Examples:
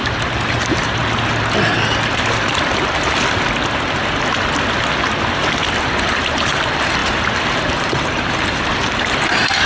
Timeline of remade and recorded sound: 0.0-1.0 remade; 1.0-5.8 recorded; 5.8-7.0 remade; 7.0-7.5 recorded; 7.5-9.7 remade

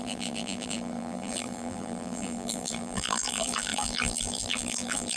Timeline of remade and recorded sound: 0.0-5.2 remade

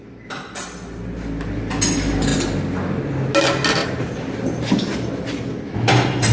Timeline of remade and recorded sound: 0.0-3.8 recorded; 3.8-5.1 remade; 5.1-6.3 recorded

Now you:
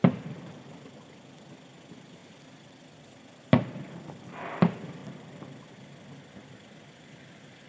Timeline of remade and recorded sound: 0.0-0.6 remade; 0.6-5.0 recorded; 5.0-7.7 remade

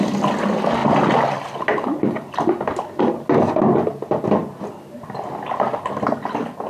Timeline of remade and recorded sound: 0.0-6.7 recorded

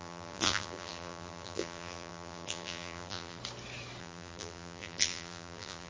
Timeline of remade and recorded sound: 0.0-3.4 remade; 3.4-4.0 recorded; 4.0-5.9 remade

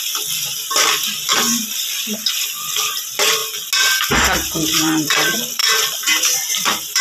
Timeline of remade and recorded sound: 0.0-3.4 remade; 3.4-4.2 recorded; 4.2-7.0 remade

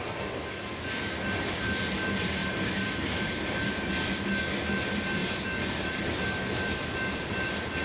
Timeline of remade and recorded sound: 0.0-2.4 recorded; 2.4-3.7 remade; 3.7-5.2 recorded; 5.2-6.0 remade; 6.0-7.8 recorded